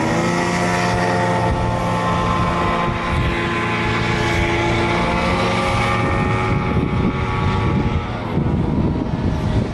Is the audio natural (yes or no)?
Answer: yes